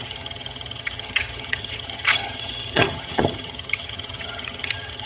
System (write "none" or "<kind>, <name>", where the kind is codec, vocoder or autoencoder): vocoder, HiFi-GAN